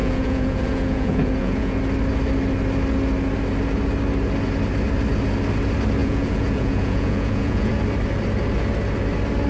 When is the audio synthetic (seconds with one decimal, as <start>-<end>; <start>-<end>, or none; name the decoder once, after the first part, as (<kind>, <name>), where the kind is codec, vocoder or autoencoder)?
0.0-1.8 (vocoder, Vocos); 6.0-7.7